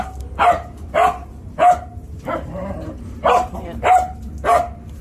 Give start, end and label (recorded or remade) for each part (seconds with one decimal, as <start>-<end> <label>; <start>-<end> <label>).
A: 0.0-1.2 recorded; 1.2-4.2 remade; 4.2-5.0 recorded